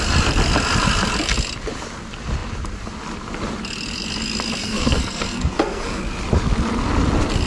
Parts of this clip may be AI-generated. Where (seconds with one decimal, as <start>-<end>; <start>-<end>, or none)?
4.6-6.0